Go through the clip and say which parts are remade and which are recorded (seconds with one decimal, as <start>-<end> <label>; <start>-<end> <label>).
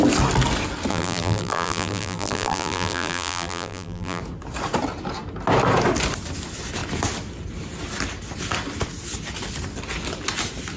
0.0-0.9 recorded; 0.9-4.2 remade; 4.2-10.8 recorded